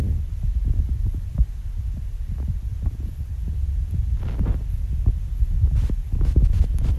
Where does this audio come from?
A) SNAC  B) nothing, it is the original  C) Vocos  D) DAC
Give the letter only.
B